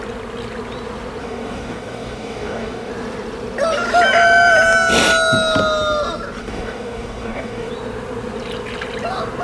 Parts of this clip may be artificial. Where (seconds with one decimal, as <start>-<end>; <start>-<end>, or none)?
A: 1.2-2.9; 6.4-7.7